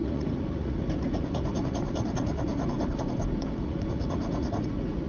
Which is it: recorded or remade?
remade